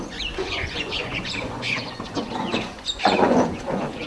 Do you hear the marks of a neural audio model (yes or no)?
yes